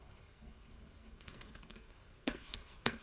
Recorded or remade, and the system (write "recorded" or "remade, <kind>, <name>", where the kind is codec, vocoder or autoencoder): remade, codec, SNAC